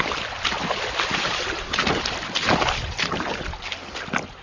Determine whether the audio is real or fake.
real